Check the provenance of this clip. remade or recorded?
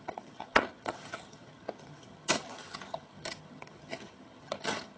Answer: remade